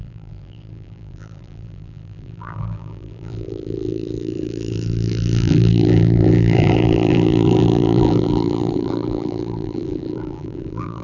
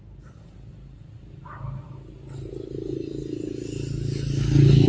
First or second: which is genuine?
second